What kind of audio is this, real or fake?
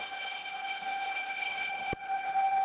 fake